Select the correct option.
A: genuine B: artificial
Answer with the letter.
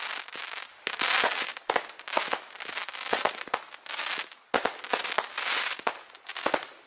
A